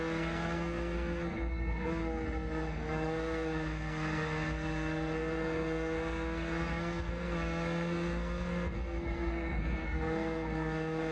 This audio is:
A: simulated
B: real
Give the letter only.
A